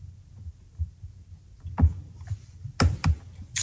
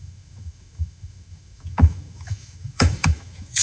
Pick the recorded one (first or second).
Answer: first